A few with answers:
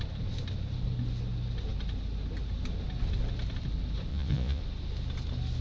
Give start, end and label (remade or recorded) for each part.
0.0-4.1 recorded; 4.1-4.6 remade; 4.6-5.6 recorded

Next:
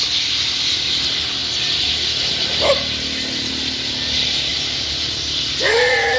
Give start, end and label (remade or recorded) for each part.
0.0-4.5 recorded; 4.5-5.4 remade; 5.4-6.2 recorded

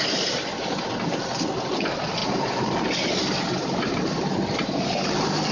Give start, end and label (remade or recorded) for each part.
0.0-2.2 recorded; 2.2-5.5 remade

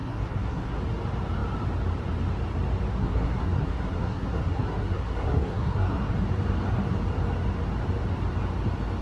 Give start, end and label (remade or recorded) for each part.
0.0-0.8 remade; 0.8-3.0 recorded; 3.0-6.1 remade; 6.1-9.0 recorded

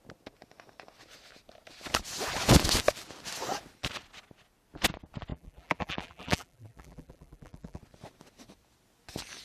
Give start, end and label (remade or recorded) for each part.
0.0-5.3 recorded; 5.3-7.8 remade; 7.8-9.4 recorded

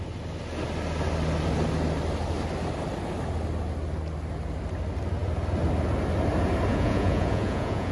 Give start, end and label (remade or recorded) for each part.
0.0-6.7 recorded; 6.7-7.9 remade

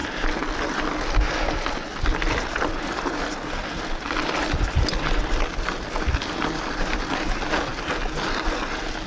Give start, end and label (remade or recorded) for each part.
0.0-9.1 recorded

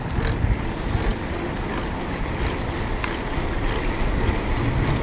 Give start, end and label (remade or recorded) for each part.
0.0-5.0 recorded